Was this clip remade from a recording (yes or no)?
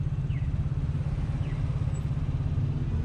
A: no